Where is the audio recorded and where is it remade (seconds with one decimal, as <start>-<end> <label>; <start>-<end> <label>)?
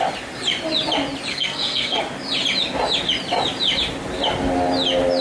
0.0-1.3 recorded; 1.3-2.0 remade; 2.0-5.2 recorded